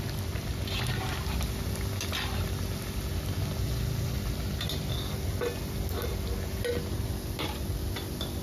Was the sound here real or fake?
real